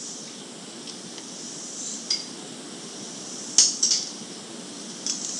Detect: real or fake real